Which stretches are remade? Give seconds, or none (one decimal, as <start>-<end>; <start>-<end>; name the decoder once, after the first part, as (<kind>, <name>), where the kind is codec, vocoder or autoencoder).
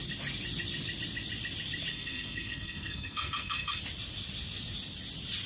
1.9-3.8 (codec, SNAC)